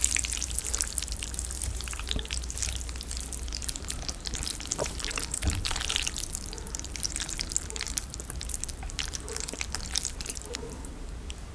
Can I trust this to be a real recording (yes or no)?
no